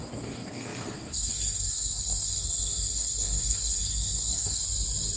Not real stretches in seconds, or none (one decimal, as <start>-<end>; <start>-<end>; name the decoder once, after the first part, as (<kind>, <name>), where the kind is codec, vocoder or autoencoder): 0.0-4.6 (codec, SNAC)